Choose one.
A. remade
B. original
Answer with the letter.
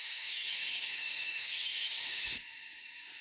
A